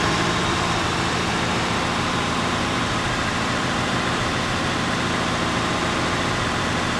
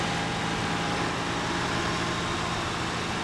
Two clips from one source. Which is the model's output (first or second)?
first